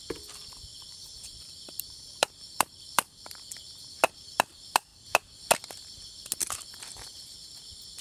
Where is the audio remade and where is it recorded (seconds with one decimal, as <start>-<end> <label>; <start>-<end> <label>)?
0.0-0.7 recorded; 0.7-3.4 remade; 3.4-8.0 recorded

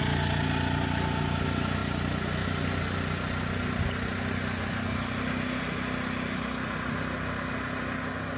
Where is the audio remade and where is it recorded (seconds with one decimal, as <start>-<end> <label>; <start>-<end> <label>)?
0.0-8.4 recorded

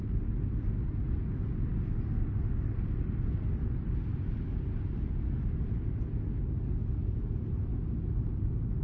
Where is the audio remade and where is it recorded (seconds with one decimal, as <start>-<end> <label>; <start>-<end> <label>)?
0.0-8.8 recorded

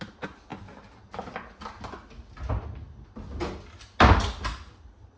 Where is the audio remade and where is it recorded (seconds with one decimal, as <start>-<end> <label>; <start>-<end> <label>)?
0.0-5.2 recorded

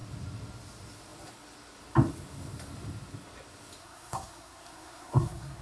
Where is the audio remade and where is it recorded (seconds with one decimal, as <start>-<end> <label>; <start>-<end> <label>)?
0.0-3.8 recorded; 3.8-5.6 remade

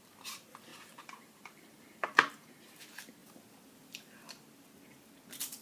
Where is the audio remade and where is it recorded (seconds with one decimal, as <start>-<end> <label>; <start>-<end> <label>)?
0.0-0.7 recorded; 0.7-2.8 remade; 2.8-5.6 recorded

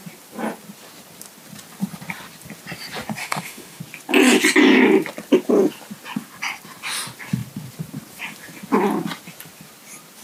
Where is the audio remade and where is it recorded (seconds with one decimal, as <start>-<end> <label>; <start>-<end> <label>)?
0.0-3.2 recorded; 3.2-3.8 remade; 3.8-10.2 recorded